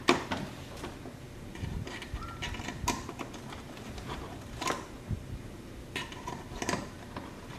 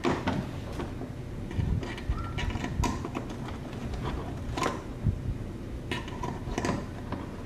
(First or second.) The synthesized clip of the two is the first